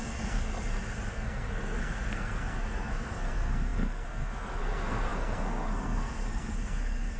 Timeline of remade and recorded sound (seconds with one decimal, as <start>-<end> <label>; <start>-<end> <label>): 0.0-0.5 remade; 0.5-1.1 recorded; 1.1-7.2 remade